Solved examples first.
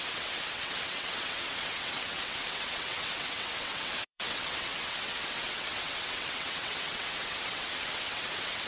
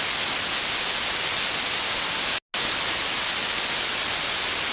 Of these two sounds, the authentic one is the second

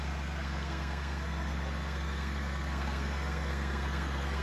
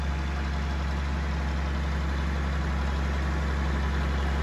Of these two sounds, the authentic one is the second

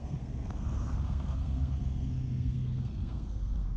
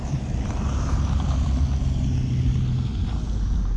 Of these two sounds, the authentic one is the second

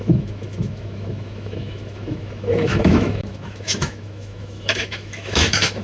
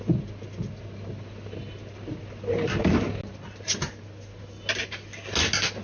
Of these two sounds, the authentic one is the second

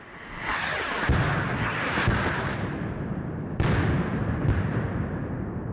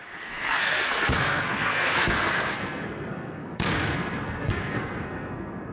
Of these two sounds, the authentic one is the first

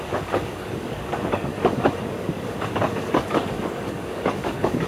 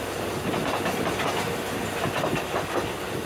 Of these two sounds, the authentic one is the second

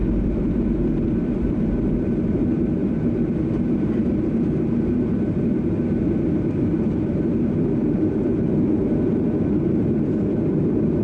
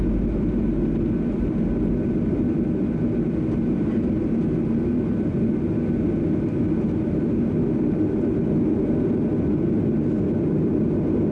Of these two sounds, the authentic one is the second